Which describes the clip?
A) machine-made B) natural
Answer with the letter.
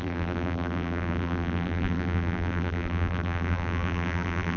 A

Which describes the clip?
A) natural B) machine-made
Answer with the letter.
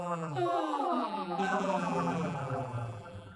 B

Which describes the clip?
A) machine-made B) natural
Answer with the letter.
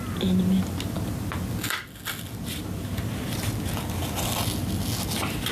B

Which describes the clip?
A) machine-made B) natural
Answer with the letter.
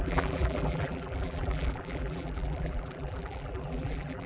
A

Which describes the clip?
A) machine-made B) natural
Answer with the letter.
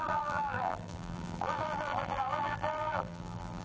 A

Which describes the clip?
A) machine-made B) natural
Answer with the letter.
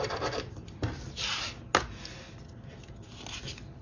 B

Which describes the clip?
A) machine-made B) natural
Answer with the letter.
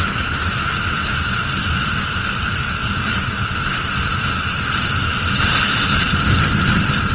A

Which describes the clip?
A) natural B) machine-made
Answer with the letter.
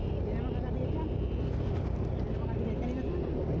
A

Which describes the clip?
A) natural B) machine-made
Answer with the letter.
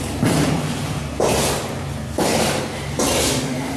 B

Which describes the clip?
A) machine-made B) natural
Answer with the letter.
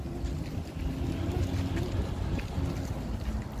B